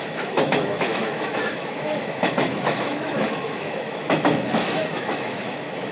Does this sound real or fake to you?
fake